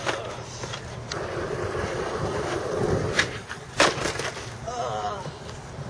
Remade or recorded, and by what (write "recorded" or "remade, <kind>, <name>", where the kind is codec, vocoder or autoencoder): remade, vocoder, BigVGAN v2